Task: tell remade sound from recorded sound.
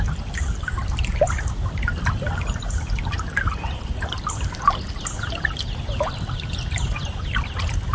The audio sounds recorded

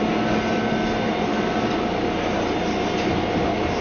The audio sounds recorded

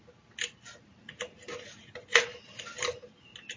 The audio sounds recorded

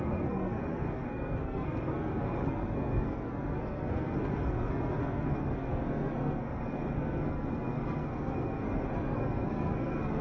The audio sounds remade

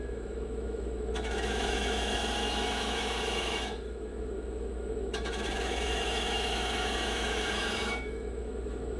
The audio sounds remade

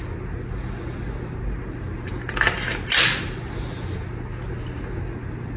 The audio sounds recorded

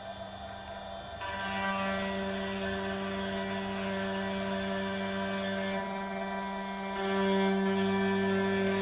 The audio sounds recorded